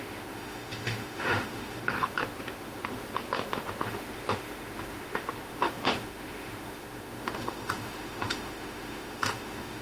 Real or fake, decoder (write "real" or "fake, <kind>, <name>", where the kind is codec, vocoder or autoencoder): fake, autoencoder, DAC-VAE